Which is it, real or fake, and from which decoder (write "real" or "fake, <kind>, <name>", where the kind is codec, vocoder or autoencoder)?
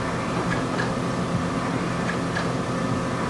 real